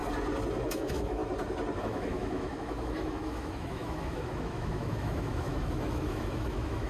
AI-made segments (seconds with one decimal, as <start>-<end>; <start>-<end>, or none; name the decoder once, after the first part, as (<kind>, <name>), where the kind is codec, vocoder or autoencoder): 0.7-1.2 (autoencoder, DAC-VAE); 1.8-6.9